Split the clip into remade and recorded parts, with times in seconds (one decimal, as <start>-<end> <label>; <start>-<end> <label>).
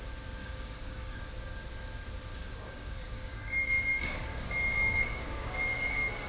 0.0-0.4 recorded; 0.4-1.2 remade; 1.2-2.3 recorded; 2.3-6.3 remade